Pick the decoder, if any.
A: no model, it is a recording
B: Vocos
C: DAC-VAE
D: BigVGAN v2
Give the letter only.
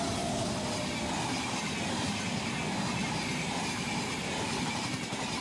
A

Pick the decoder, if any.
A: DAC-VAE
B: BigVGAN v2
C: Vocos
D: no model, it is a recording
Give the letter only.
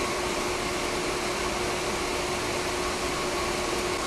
D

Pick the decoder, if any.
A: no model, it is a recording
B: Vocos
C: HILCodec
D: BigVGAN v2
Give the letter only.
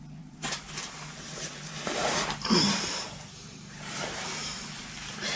D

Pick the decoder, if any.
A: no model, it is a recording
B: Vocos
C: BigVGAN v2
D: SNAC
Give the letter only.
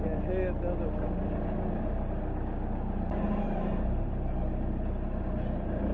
A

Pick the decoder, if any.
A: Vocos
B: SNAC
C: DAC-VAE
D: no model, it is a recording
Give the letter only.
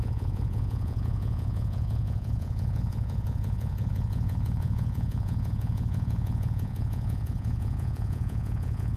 A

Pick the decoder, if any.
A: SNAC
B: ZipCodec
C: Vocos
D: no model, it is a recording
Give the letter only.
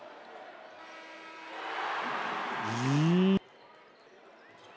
D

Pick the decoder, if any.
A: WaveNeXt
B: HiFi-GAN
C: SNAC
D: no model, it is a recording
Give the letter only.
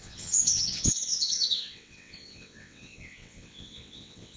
A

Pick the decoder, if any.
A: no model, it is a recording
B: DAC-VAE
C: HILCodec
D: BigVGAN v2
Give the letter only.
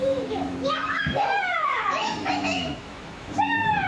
B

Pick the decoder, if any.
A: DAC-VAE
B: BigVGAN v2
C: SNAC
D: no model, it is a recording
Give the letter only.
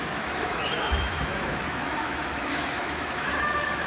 A